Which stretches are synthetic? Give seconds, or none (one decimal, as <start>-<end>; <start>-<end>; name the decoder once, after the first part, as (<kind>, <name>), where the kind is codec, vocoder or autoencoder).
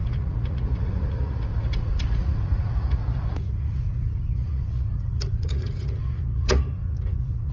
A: 0.0-7.5 (vocoder, Vocos)